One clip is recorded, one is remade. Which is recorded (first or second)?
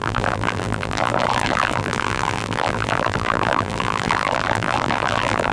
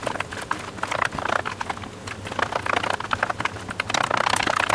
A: second